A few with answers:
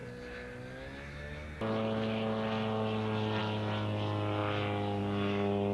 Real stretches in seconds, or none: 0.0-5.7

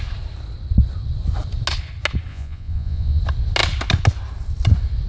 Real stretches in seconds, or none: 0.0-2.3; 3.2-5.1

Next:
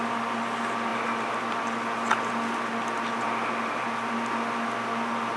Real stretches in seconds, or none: 0.0-5.4

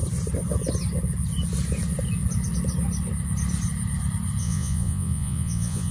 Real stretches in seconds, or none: 0.0-4.4

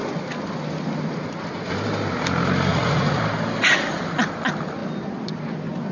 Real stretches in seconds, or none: 0.0-2.7; 3.2-5.9

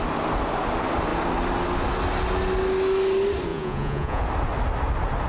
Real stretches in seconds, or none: 0.0-3.5; 4.2-5.3